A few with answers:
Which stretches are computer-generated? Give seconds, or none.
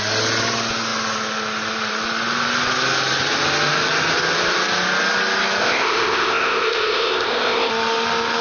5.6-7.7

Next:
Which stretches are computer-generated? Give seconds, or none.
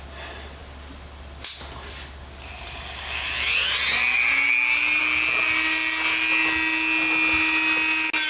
none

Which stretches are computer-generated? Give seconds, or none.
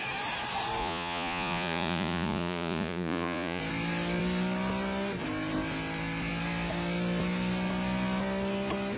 0.8-3.6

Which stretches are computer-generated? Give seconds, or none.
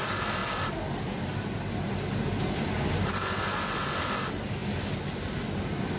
none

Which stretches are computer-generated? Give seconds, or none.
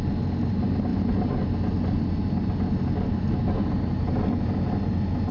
none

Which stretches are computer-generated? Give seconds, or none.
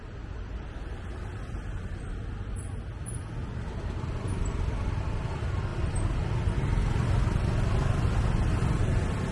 none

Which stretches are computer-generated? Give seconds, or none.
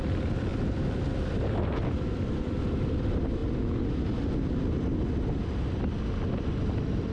0.0-0.5; 1.6-3.4; 6.6-7.1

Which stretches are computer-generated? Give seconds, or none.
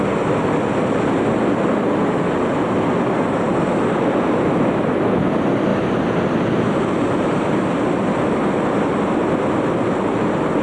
none